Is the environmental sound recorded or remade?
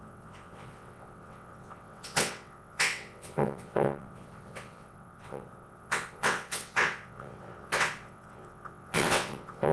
remade